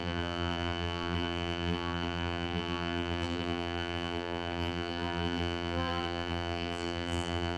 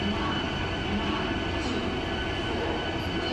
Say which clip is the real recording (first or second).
second